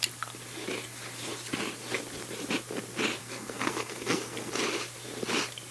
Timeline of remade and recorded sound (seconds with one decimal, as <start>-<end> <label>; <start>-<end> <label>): 0.0-3.2 recorded; 3.2-4.5 remade; 4.5-5.7 recorded